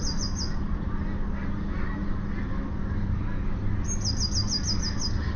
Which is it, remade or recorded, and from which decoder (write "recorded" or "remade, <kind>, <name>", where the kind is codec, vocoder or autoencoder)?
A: recorded